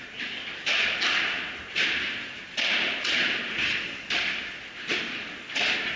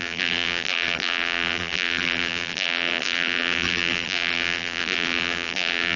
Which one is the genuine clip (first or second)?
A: first